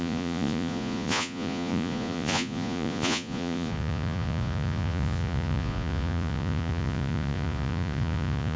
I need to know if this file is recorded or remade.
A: remade